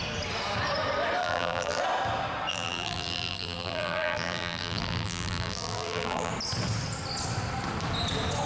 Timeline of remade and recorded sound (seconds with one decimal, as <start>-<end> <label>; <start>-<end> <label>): 0.0-1.2 recorded; 1.2-1.8 remade; 1.8-2.5 recorded; 2.5-6.3 remade; 6.3-8.5 recorded